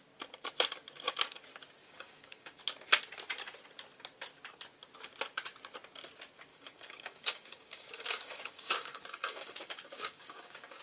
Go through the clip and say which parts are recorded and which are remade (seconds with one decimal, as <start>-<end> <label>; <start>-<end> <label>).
0.0-1.8 recorded; 1.8-2.6 remade; 2.6-6.5 recorded; 6.5-10.8 remade